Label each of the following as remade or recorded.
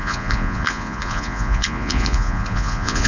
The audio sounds remade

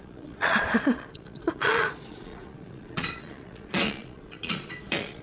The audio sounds remade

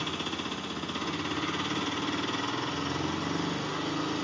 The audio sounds recorded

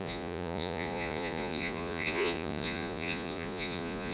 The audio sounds remade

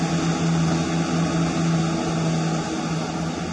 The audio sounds recorded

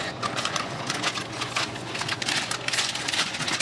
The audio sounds remade